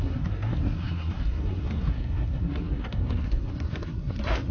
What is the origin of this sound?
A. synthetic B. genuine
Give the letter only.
A